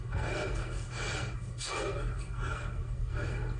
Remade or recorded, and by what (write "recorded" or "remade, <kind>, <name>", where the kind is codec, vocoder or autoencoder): remade, codec, SNAC